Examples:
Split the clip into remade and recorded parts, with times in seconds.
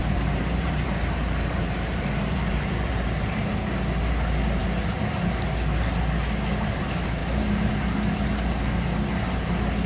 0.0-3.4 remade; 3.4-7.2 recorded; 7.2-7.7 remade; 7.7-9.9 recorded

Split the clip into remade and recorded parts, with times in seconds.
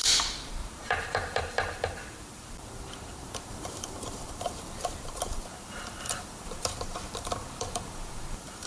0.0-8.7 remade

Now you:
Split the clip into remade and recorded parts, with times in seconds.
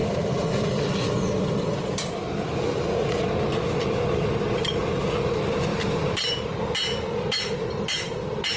0.0-5.7 recorded; 5.7-6.6 remade; 6.6-8.6 recorded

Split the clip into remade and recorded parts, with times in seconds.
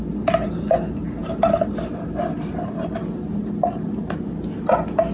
0.0-5.1 recorded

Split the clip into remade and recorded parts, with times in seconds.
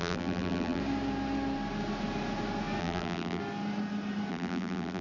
0.0-0.8 remade; 0.8-2.8 recorded; 2.8-3.4 remade; 3.4-4.3 recorded; 4.3-5.0 remade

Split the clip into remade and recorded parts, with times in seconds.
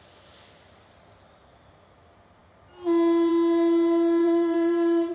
0.0-4.2 recorded; 4.2-5.1 remade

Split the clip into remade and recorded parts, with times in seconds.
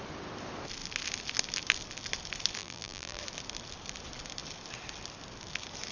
0.0-2.6 recorded; 2.6-3.2 remade; 3.2-5.9 recorded